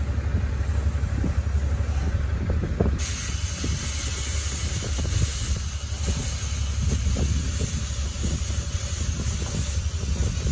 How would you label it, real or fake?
real